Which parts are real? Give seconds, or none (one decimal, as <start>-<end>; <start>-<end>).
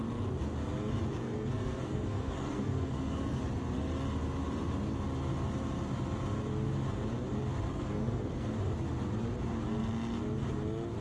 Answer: 0.0-1.2; 3.4-7.7; 8.5-11.0